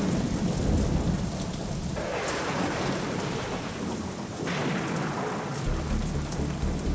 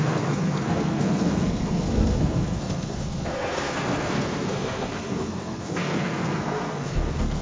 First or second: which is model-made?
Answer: second